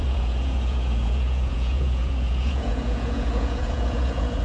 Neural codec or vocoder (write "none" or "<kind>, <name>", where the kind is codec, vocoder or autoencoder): vocoder, Vocos